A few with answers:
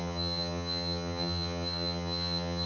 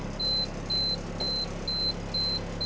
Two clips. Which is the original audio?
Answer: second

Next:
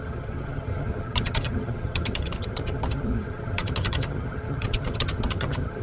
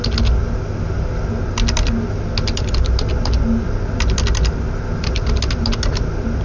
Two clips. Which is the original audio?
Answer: second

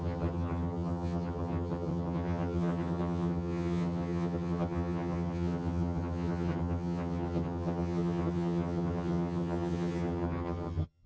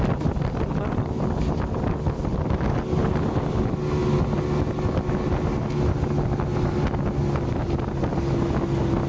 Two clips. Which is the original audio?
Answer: second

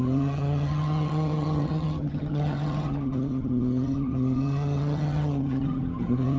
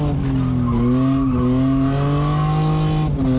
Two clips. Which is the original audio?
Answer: second